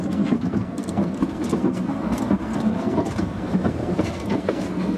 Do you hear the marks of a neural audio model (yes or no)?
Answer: yes